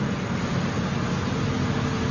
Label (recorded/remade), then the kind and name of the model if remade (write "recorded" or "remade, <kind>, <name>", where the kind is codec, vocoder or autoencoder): recorded